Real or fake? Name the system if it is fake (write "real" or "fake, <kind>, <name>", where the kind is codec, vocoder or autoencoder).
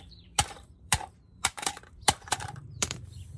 fake, vocoder, BigVGAN v2